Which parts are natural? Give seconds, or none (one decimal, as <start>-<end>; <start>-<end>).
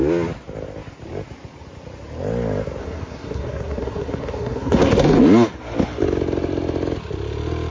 0.0-2.8; 5.2-7.7